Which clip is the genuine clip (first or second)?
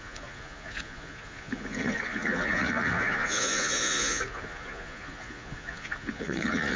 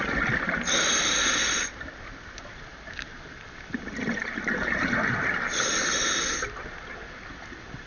second